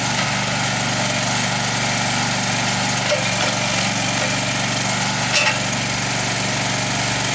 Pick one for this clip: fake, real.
real